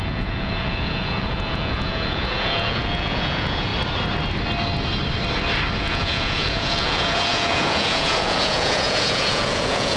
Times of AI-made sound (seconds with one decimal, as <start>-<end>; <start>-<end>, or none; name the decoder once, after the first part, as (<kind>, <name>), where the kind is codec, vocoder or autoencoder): 0.0-3.7 (vocoder, Vocos); 5.8-10.0